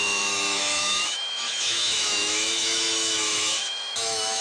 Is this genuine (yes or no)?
no